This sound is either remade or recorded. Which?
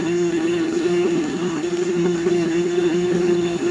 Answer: remade